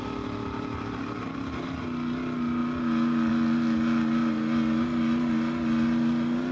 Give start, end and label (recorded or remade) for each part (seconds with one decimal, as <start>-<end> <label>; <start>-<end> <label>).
0.0-6.5 recorded